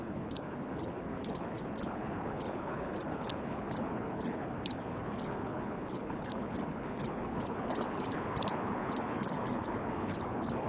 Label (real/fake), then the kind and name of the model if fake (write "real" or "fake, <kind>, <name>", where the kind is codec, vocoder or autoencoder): fake, codec, HILCodec